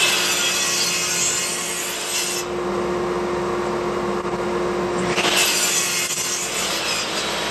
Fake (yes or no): no